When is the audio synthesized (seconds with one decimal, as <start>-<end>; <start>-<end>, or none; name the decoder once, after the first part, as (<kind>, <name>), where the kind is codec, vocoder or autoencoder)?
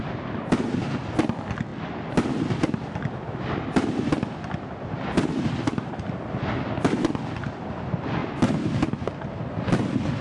none